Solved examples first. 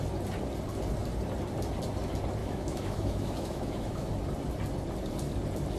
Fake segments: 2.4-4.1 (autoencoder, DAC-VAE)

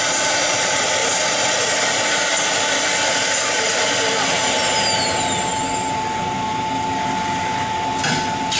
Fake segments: none